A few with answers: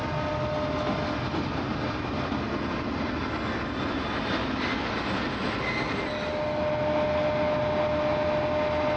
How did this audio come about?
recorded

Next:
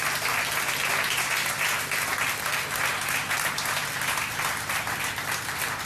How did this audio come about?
recorded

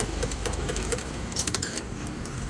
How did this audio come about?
remade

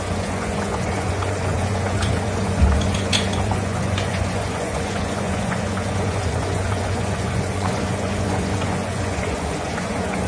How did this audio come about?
remade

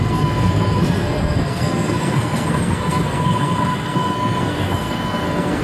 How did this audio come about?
remade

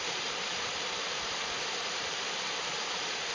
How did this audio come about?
remade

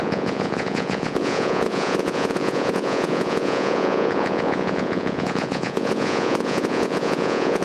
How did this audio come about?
remade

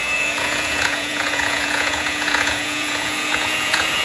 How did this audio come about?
remade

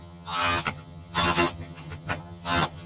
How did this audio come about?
remade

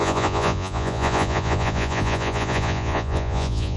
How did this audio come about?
remade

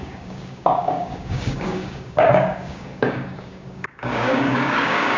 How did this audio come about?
remade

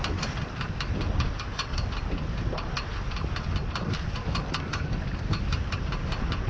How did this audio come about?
recorded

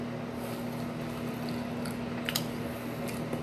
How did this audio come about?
recorded